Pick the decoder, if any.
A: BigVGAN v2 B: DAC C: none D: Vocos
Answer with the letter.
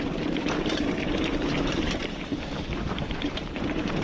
A